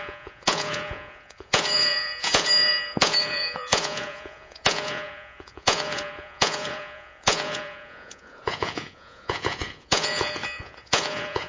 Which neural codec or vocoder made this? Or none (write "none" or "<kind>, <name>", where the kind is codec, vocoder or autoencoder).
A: vocoder, Vocos